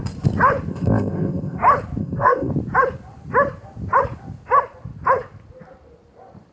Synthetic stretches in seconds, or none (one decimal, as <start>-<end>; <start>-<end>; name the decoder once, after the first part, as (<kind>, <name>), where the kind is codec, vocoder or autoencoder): 0.7-1.6 (codec, ZipCodec); 2.0-2.5